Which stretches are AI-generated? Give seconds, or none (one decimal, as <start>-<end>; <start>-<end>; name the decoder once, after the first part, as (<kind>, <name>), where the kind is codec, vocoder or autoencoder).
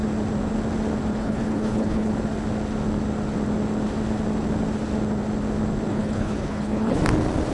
1.1-2.1 (codec, HILCodec); 5.9-7.0